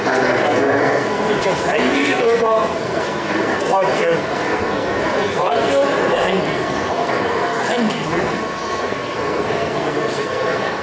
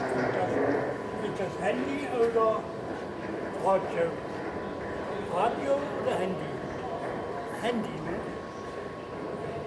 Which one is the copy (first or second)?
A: first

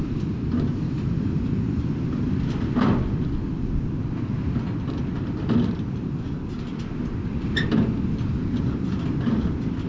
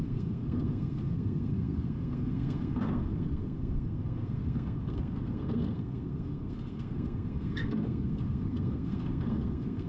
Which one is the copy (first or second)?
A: second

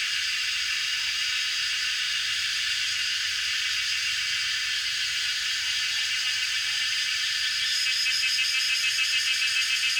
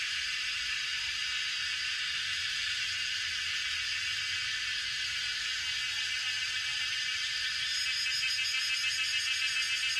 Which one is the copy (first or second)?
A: first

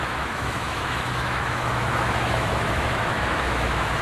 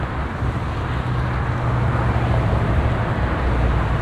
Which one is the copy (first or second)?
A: first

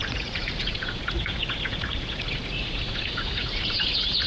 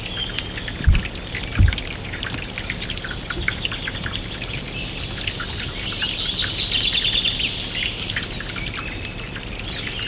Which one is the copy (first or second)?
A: first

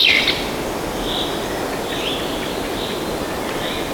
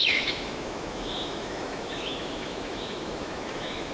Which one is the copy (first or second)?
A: second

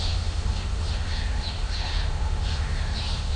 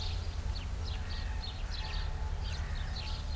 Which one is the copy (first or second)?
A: first